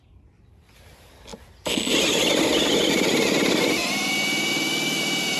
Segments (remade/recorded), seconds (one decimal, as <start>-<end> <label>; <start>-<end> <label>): 0.0-5.4 recorded